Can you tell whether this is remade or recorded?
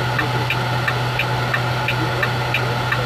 recorded